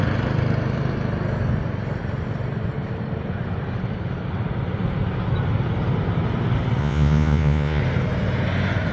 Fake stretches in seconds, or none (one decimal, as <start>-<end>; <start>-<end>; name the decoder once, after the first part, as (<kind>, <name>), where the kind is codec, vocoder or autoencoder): 6.8-7.8 (vocoder, Vocos)